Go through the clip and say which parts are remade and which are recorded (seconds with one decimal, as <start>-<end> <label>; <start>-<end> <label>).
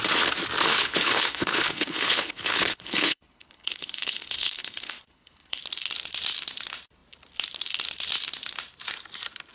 0.0-0.7 recorded; 0.7-5.6 remade; 5.6-9.5 recorded